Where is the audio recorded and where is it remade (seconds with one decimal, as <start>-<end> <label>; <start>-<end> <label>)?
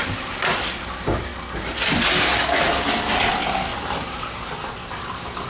0.0-1.3 remade; 1.3-3.3 recorded; 3.3-5.5 remade